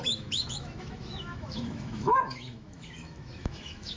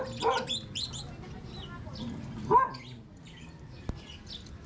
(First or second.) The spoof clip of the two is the first